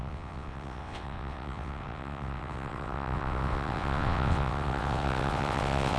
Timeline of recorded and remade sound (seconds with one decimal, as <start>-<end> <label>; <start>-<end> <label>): 0.0-6.0 remade